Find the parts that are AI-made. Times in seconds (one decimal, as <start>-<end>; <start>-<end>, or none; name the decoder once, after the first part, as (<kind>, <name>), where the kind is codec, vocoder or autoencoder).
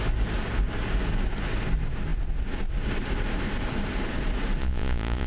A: 4.6-5.3 (vocoder, Vocos)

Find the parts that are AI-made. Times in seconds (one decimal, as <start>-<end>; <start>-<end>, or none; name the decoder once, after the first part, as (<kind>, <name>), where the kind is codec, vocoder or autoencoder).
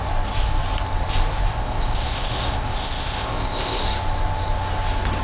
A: 1.5-3.8 (codec, ZipCodec)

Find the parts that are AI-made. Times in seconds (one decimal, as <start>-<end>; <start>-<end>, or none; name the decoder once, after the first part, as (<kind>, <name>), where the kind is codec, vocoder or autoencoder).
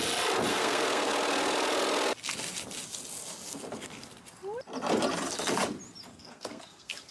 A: 0.5-1.1 (codec, SNAC); 6.1-7.1